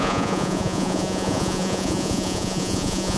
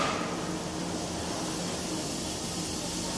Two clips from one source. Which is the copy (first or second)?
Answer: first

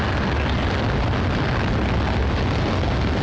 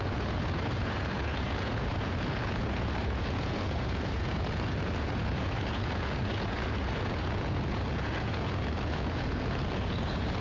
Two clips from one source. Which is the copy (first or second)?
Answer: second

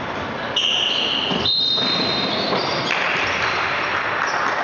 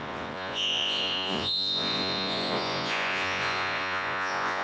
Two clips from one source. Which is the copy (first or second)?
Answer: second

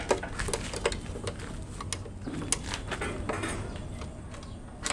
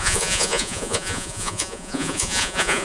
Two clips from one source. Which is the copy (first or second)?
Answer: second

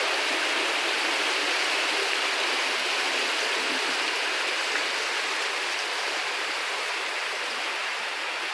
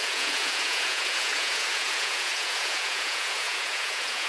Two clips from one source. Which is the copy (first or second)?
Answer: second